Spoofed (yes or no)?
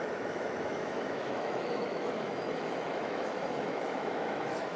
yes